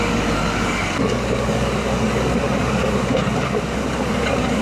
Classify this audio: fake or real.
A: fake